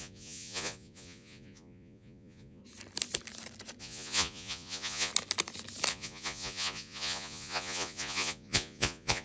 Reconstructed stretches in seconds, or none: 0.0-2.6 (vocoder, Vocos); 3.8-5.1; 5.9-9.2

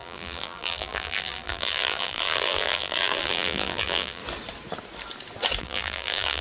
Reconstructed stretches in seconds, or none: 0.0-4.2 (vocoder, BigVGAN v2); 5.6-6.4

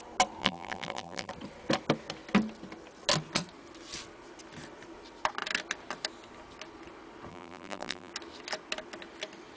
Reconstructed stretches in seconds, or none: 0.4-1.3 (vocoder, BigVGAN v2); 7.3-8.1

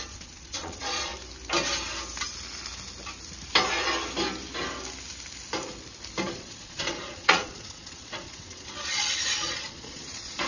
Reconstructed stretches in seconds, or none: 0.0-1.1 (vocoder, Vocos); 6.3-10.5

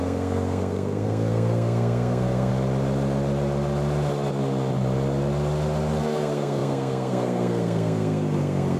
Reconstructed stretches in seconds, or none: 0.0-2.5 (codec, SNAC); 6.0-8.8

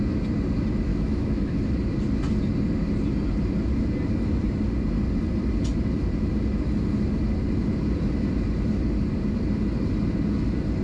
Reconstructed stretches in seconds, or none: 0.9-1.6 (autoencoder, DAC-VAE)

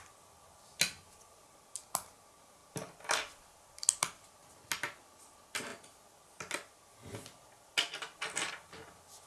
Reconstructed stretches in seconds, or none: 2.6-3.6 (vocoder, BigVGAN v2)